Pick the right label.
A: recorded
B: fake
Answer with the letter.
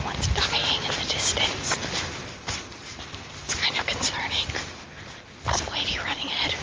A